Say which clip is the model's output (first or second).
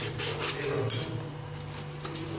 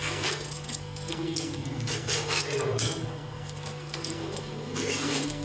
second